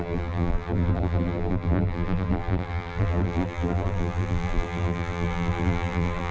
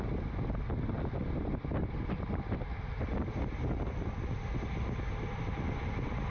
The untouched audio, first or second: second